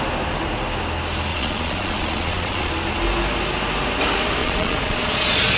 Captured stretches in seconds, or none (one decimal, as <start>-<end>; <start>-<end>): 0.0-1.3; 2.7-4.4